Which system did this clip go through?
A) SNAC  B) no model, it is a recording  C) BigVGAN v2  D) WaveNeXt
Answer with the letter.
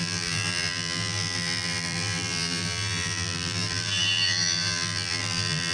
C